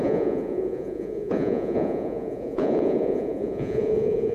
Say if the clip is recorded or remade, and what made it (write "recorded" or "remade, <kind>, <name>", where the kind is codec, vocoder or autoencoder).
remade, vocoder, Vocos